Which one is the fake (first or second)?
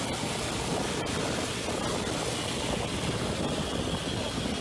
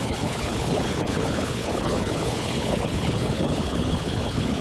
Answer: second